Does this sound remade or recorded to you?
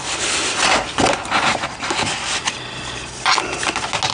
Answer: recorded